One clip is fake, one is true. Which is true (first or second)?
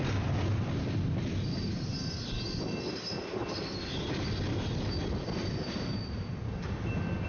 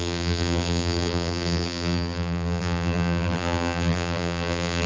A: first